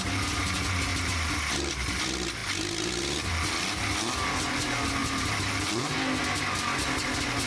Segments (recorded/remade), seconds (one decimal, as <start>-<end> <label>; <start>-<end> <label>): 0.0-7.5 recorded